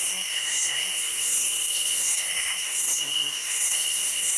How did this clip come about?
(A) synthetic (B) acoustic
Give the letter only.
A